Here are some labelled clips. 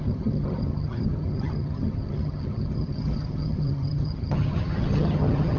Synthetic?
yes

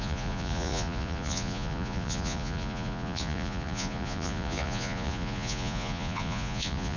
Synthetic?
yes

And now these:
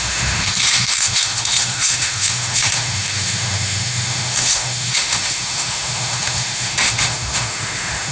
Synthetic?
yes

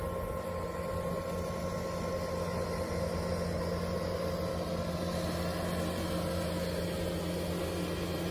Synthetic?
no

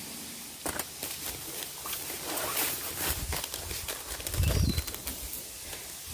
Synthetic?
no